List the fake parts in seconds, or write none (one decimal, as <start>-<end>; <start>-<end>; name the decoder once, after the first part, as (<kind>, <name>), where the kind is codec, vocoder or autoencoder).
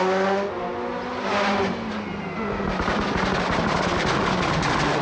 none